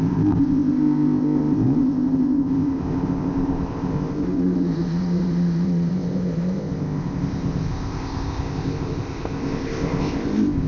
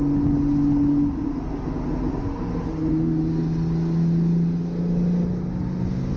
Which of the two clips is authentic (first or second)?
second